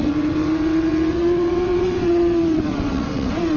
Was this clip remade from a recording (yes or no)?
yes